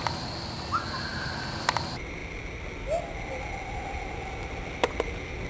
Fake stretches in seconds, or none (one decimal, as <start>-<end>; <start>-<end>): none